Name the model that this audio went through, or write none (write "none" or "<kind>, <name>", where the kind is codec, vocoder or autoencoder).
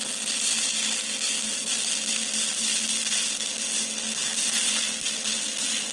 none